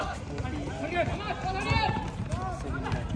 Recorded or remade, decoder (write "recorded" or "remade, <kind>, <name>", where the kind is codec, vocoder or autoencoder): recorded